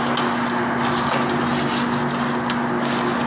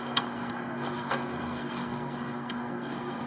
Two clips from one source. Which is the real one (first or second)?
first